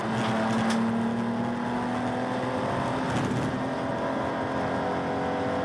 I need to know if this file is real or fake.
real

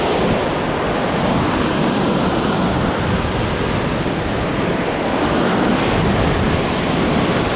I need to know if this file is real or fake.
real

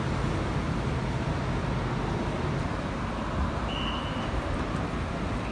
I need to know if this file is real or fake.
real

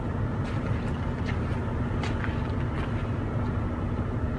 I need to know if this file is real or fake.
real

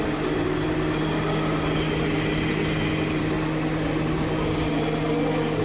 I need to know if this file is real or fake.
real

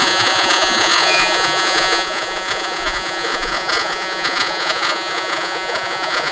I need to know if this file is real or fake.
fake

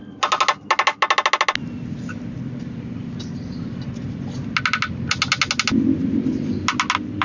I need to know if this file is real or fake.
real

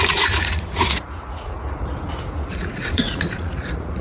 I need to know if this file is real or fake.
fake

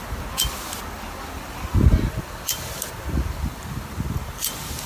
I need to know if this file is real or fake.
real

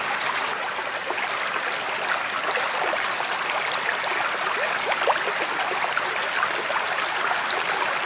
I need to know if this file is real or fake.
real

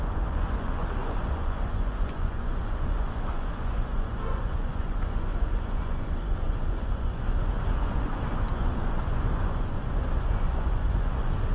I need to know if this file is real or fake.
fake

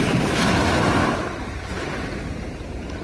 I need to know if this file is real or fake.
real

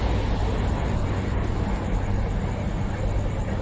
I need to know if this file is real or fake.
real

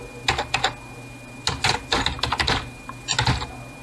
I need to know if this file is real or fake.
real